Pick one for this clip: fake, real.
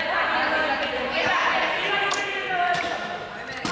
real